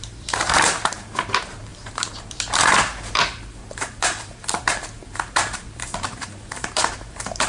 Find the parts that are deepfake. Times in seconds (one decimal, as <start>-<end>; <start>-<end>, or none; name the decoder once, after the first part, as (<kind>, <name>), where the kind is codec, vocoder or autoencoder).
0.0-7.5 (vocoder, BigVGAN v2)